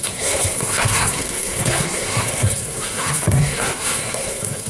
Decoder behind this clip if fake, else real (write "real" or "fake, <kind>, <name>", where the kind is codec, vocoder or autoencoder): fake, codec, SNAC